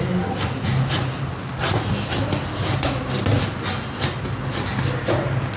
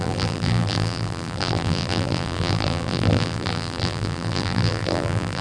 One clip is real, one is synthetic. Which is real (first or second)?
first